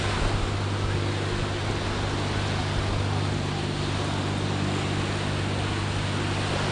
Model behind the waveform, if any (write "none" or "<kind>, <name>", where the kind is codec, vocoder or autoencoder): none